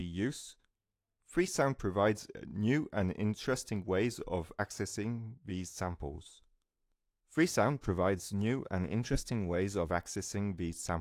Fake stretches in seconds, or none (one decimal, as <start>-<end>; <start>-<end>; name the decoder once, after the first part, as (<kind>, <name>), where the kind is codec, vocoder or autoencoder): 0.0-0.7 (autoencoder, DAC-VAE); 5.5-9.9